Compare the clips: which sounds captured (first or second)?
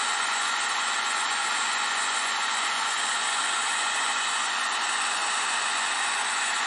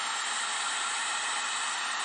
second